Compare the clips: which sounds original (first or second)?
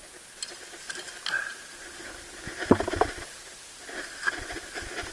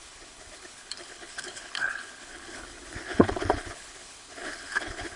first